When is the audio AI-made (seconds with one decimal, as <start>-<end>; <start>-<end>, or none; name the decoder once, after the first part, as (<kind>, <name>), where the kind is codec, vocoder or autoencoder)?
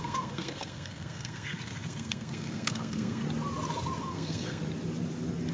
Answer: 0.0-3.2 (codec, SNAC); 4.0-4.6